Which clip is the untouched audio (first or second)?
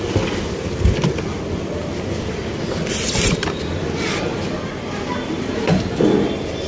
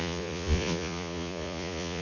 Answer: first